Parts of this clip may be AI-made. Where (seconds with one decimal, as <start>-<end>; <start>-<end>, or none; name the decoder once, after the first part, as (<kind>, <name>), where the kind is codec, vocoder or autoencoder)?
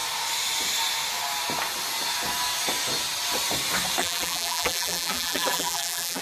4.0-6.2 (vocoder, BigVGAN v2)